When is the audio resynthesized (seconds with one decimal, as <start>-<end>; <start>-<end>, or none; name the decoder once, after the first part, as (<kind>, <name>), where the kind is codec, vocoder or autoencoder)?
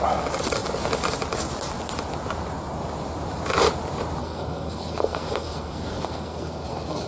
4.2-7.1 (codec, SNAC)